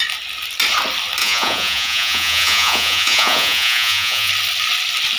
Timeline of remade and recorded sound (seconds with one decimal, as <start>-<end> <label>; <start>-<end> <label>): 0.0-1.2 recorded; 1.2-4.3 remade; 4.3-5.2 recorded